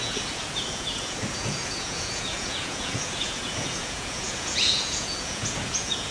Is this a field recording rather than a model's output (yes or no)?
no